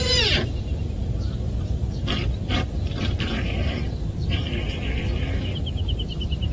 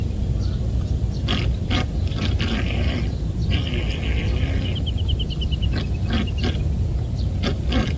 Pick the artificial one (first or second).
first